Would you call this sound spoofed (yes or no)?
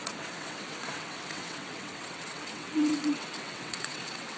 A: yes